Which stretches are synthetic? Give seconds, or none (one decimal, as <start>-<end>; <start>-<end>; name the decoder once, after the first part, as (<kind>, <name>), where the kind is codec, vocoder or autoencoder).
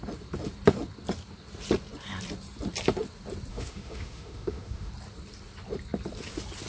3.5-4.9 (autoencoder, DAC-VAE)